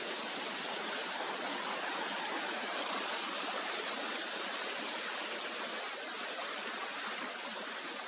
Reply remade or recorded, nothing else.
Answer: recorded